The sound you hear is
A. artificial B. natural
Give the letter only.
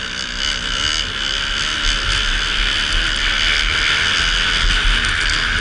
B